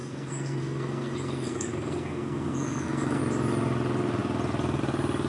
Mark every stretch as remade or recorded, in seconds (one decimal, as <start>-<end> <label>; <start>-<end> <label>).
0.0-3.2 remade; 3.2-5.3 recorded